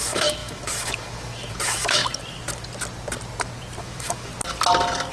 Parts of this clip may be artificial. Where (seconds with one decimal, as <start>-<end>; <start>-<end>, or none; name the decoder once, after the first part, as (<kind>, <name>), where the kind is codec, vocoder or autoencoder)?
0.0-2.0 (autoencoder, DAC-VAE); 3.8-4.3